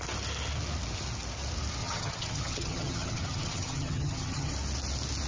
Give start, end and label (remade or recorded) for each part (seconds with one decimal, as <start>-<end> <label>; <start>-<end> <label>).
0.0-1.8 recorded; 1.8-4.5 remade; 4.5-5.3 recorded